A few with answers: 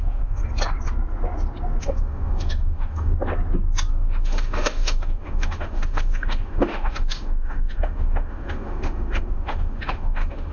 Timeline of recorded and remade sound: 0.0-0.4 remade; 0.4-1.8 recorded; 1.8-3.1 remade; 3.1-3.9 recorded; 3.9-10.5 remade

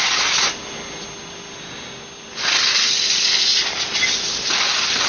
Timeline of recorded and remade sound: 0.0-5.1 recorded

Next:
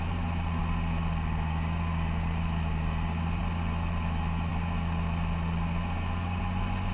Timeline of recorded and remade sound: 0.0-6.9 recorded

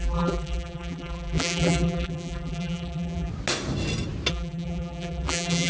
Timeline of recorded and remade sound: 0.0-3.3 remade; 3.3-4.3 recorded; 4.3-5.7 remade

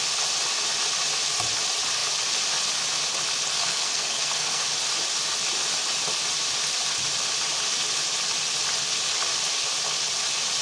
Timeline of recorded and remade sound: 0.0-3.5 recorded; 3.5-4.7 remade; 4.7-10.6 recorded

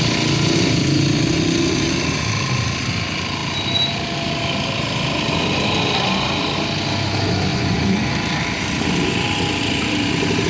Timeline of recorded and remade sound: 0.0-7.5 recorded; 7.5-8.1 remade; 8.1-10.5 recorded

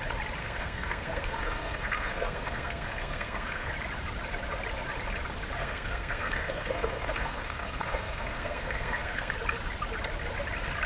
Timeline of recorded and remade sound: 0.0-0.4 recorded; 0.4-3.7 remade; 3.7-5.6 recorded; 5.6-9.3 remade; 9.3-10.9 recorded

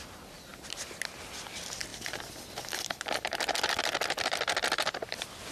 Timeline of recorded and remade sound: 0.0-0.5 remade; 0.5-1.1 recorded; 1.1-5.5 remade